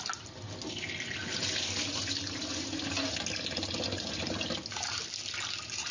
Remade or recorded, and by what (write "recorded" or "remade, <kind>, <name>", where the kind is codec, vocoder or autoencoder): recorded